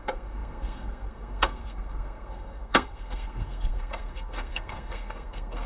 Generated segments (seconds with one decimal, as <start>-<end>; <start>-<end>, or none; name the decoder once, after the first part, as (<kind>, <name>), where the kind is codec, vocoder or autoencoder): 0.0-5.7 (codec, SNAC)